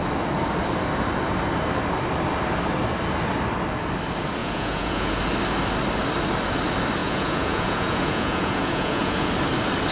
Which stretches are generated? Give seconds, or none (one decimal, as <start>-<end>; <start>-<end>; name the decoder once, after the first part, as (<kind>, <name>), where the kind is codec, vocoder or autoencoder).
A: 4.4-5.2 (vocoder, Vocos); 7.0-9.3